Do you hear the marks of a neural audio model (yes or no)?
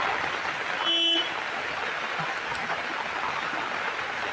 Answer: no